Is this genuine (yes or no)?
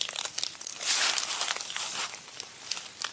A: yes